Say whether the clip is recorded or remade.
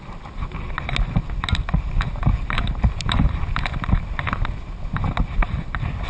recorded